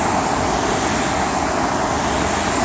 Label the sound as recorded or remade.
recorded